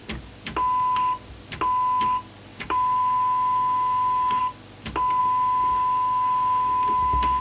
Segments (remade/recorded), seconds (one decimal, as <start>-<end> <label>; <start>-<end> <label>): 0.0-2.5 recorded; 2.5-4.4 remade; 4.4-5.2 recorded; 5.2-7.4 remade